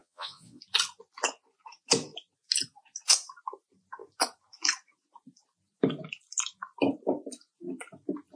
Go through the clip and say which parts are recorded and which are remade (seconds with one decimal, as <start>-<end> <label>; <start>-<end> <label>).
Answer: 0.0-0.6 remade; 0.6-8.4 recorded